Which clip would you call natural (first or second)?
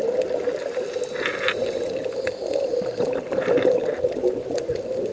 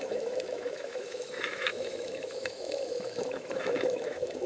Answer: first